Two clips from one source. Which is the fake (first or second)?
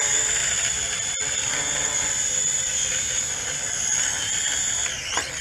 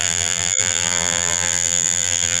second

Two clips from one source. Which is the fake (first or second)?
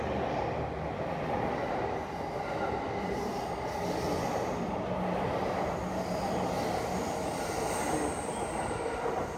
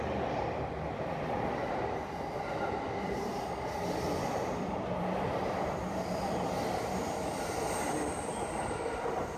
second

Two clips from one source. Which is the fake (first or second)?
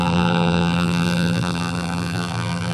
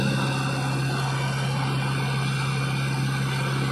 first